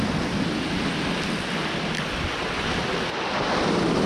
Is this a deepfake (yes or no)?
no